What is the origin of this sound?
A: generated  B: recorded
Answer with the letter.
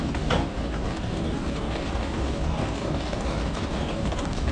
A